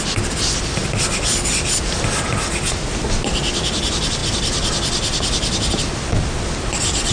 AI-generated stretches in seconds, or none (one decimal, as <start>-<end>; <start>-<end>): none